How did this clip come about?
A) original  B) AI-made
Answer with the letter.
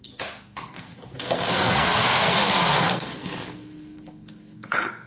B